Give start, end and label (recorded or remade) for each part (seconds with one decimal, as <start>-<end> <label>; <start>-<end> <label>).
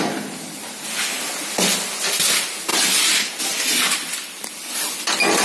0.0-2.7 recorded; 2.7-3.4 remade; 3.4-5.4 recorded